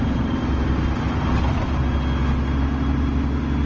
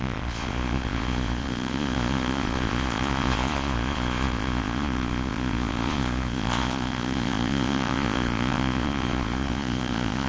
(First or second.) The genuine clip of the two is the first